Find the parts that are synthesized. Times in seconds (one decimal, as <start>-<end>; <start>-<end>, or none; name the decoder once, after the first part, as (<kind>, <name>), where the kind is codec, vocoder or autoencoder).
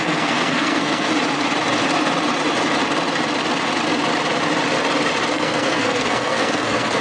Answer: 0.0-1.1 (codec, SNAC); 5.3-7.0